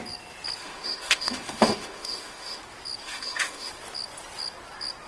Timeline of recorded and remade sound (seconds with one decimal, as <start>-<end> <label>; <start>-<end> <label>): 0.0-0.6 recorded; 0.6-2.6 remade; 2.6-3.0 recorded; 3.0-3.7 remade; 3.7-5.1 recorded